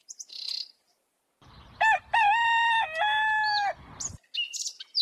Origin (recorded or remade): recorded